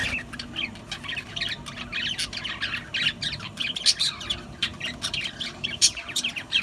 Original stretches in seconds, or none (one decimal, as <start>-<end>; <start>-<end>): 0.0-4.7